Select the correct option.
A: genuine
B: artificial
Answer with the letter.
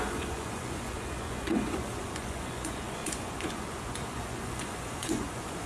B